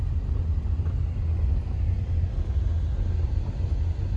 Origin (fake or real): real